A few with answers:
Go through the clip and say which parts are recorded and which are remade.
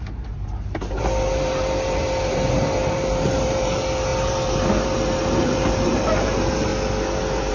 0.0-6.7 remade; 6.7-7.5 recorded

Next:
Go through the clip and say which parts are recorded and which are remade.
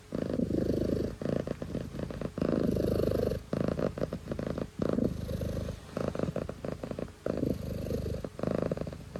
0.0-9.2 recorded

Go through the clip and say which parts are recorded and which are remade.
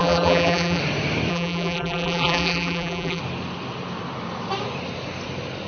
0.0-0.8 remade; 0.8-1.3 recorded; 1.3-3.2 remade; 3.2-5.7 recorded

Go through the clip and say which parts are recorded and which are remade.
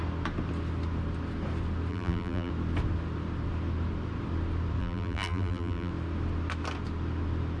0.0-1.9 recorded; 1.9-2.5 remade; 2.5-4.8 recorded; 4.8-5.9 remade; 5.9-7.6 recorded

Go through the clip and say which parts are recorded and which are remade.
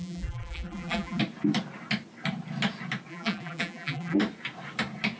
0.0-1.2 remade; 1.2-3.1 recorded; 3.1-4.2 remade; 4.2-5.2 recorded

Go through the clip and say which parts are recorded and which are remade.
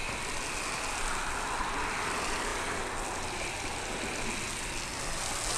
0.0-5.6 recorded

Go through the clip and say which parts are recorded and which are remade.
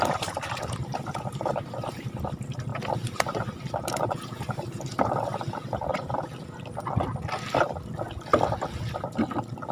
0.0-6.3 remade; 6.3-9.7 recorded